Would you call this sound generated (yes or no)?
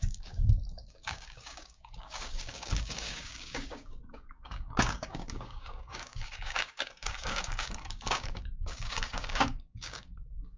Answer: yes